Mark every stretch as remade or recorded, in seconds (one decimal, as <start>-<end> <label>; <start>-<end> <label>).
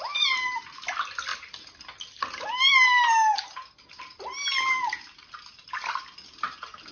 0.0-6.9 recorded